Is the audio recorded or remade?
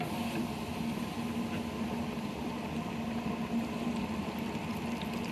recorded